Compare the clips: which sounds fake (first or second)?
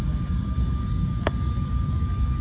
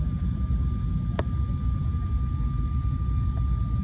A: first